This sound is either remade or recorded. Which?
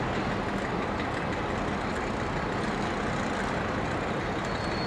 recorded